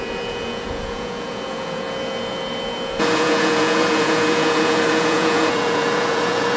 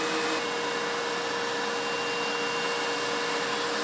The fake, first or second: first